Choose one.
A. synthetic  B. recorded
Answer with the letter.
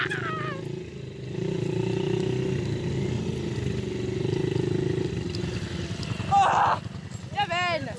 B